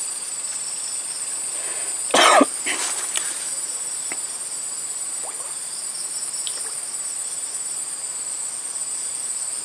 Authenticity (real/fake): real